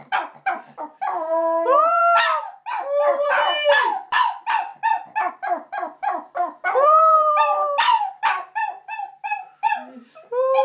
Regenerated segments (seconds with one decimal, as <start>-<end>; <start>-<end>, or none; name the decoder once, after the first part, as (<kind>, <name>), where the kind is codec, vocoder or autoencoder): 0.0-2.0 (vocoder, BigVGAN v2); 3.3-4.7; 5.3-10.6